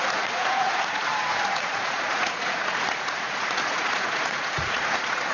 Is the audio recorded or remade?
remade